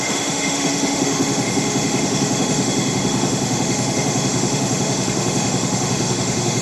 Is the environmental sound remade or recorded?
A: remade